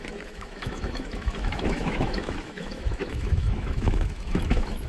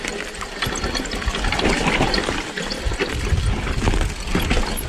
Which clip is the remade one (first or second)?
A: first